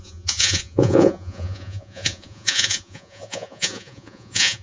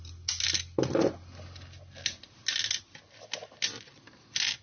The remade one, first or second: first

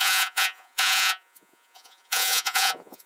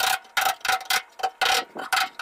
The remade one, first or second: first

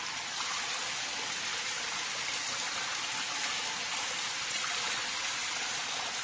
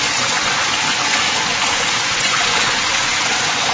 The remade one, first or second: second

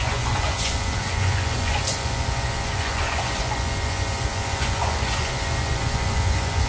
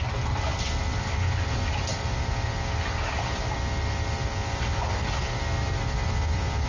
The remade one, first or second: first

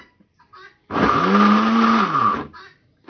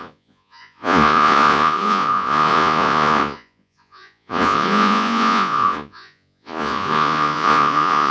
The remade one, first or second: second